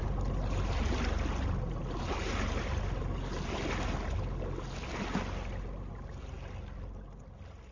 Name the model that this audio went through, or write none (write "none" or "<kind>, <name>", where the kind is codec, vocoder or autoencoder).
none